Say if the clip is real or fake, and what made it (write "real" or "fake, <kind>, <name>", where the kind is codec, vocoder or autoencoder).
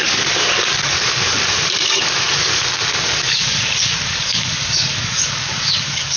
fake, codec, DAC